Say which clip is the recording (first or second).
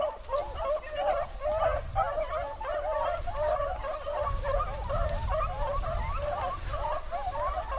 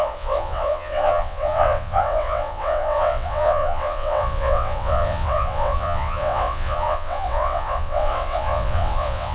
first